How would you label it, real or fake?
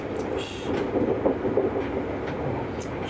real